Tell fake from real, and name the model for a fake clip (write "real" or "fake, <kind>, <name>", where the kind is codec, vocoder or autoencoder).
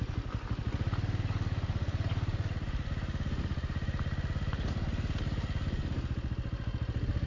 real